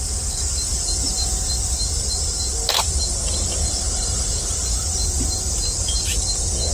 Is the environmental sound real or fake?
real